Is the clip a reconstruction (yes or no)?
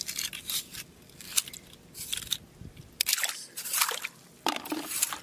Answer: no